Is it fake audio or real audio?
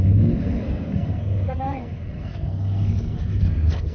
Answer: fake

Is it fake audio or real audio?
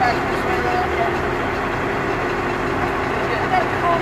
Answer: real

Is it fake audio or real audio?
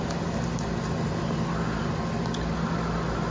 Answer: real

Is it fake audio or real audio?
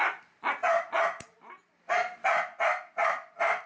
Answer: real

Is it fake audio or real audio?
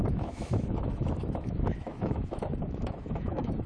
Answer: fake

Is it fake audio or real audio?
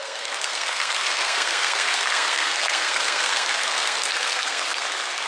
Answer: fake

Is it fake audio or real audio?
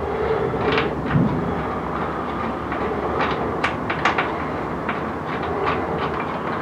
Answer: real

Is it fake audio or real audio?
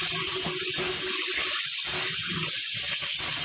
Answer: real